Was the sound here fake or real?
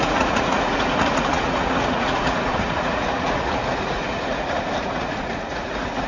fake